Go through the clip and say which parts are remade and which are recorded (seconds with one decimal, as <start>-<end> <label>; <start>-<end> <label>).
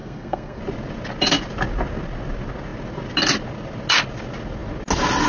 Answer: 0.0-0.6 remade; 0.6-5.3 recorded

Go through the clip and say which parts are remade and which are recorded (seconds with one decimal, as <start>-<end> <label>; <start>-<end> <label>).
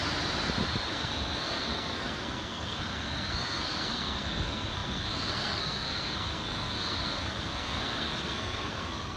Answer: 0.0-0.9 recorded; 0.9-9.2 remade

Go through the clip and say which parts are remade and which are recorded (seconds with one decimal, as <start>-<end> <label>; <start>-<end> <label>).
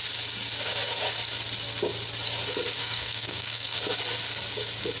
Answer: 0.0-2.8 recorded; 2.8-3.8 remade; 3.8-5.0 recorded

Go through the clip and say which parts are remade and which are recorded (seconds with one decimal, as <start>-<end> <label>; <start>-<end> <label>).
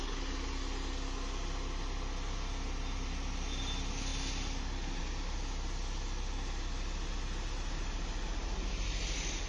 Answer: 0.0-9.5 recorded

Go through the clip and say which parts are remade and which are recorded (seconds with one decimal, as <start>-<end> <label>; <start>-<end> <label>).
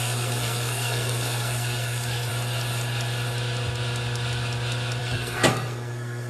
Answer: 0.0-2.3 remade; 2.3-5.0 recorded; 5.0-6.3 remade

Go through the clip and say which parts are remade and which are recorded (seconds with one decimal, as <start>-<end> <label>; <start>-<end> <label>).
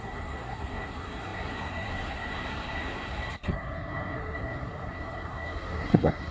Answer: 0.0-6.3 remade